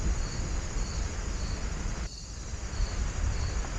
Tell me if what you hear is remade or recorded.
recorded